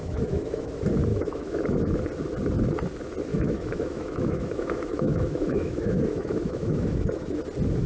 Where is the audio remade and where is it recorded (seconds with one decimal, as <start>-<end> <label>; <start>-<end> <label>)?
0.0-0.7 remade; 0.7-1.1 recorded; 1.1-2.0 remade; 2.0-3.3 recorded; 3.3-7.4 remade; 7.4-7.9 recorded

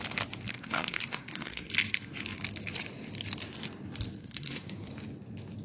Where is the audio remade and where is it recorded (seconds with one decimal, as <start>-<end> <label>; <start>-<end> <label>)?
0.0-0.5 recorded; 0.5-1.7 remade; 1.7-4.2 recorded; 4.2-4.9 remade; 4.9-5.6 recorded

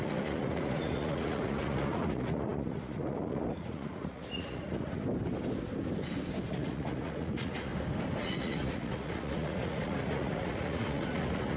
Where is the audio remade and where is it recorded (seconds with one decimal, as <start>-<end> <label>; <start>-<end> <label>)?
0.0-5.0 remade; 5.0-6.5 recorded; 6.5-7.7 remade; 7.7-8.2 recorded; 8.2-11.6 remade

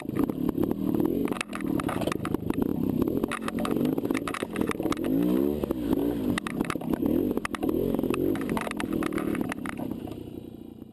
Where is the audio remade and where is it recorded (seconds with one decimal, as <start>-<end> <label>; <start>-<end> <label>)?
0.0-10.9 recorded

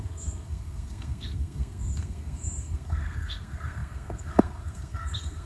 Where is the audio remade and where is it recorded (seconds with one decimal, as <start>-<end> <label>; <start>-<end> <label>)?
0.0-5.5 remade

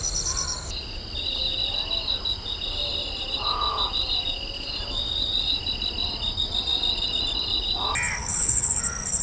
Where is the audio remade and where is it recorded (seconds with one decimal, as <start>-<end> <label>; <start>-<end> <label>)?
0.0-8.2 recorded; 8.2-8.7 remade; 8.7-9.2 recorded

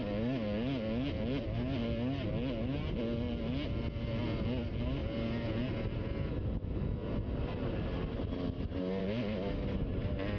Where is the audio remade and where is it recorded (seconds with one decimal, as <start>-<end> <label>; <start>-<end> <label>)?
0.0-10.4 recorded

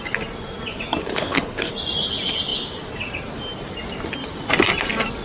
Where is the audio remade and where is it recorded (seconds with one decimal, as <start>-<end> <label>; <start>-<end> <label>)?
0.0-1.1 recorded; 1.1-1.7 remade; 1.7-5.2 recorded